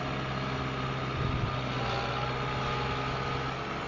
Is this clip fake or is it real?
real